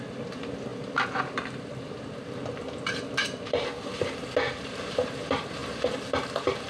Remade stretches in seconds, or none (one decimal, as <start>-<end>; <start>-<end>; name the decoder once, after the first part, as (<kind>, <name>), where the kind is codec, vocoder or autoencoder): none